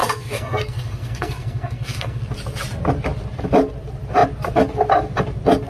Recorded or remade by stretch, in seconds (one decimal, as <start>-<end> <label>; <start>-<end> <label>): 0.0-2.2 remade; 2.2-5.7 recorded